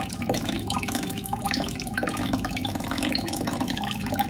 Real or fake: fake